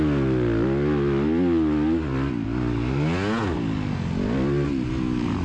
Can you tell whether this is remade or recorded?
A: recorded